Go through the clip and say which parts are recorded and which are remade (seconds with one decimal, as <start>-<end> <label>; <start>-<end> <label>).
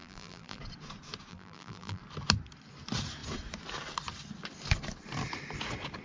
0.0-0.6 remade; 0.6-1.3 recorded; 1.3-2.0 remade; 2.0-6.0 recorded